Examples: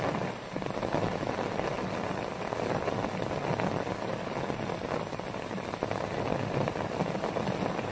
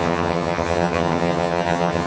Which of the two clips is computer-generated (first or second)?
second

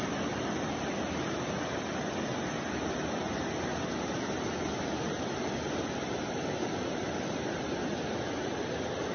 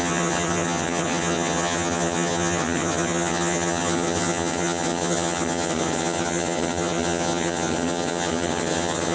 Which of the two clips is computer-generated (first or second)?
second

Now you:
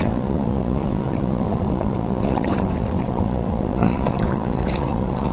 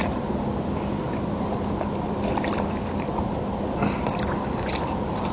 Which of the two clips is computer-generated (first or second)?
first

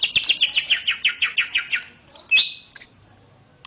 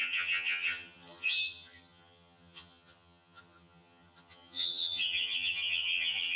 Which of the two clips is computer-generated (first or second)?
second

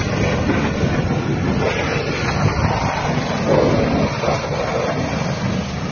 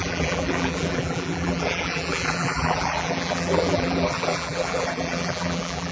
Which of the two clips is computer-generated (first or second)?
second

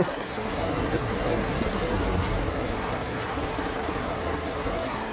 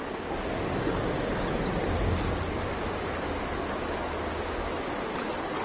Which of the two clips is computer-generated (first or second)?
first